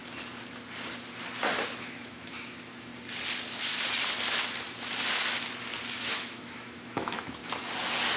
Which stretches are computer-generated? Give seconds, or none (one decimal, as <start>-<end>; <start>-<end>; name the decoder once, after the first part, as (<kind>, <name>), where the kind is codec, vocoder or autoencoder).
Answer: 1.8-2.9 (autoencoder, DAC-VAE); 5.9-7.4